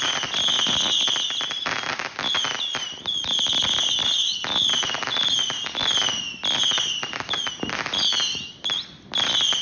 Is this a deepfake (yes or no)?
no